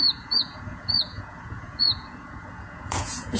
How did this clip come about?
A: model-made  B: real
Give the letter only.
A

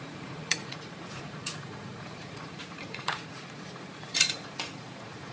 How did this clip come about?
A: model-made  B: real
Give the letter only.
A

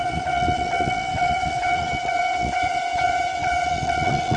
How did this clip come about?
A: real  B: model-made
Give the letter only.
B